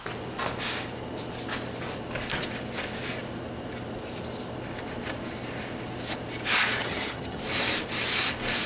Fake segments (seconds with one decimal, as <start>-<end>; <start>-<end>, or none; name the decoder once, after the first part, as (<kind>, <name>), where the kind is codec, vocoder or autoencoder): 6.8-7.4 (vocoder, HiFi-GAN)